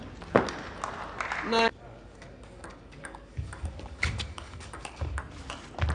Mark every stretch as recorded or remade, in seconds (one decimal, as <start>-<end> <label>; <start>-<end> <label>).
0.0-1.7 recorded; 1.7-5.2 remade; 5.2-5.9 recorded